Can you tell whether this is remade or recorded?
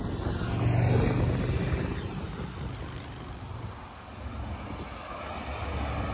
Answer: recorded